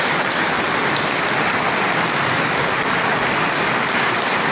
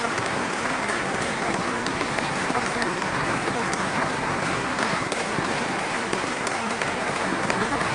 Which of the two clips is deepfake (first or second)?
second